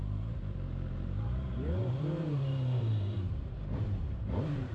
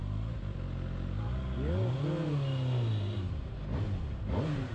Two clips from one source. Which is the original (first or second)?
second